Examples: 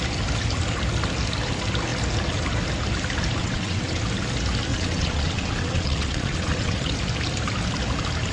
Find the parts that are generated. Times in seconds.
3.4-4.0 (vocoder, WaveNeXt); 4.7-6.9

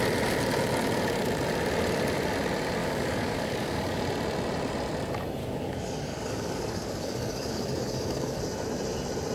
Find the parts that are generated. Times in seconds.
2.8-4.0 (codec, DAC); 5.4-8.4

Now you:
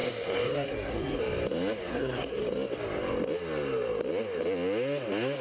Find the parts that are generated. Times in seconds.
0.0-1.2 (codec, SNAC); 1.9-2.4